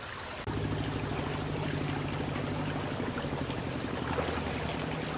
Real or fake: real